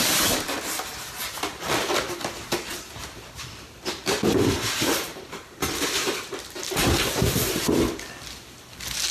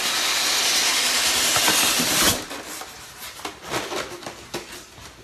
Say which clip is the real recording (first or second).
second